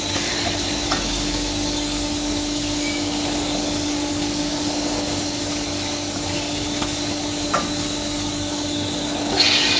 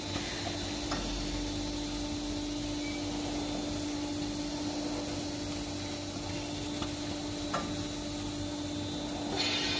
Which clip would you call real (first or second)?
second